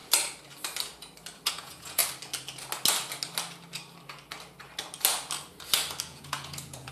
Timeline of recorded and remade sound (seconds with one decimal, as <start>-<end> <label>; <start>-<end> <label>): 0.0-1.5 recorded; 1.5-2.0 remade; 2.0-6.0 recorded; 6.0-6.9 remade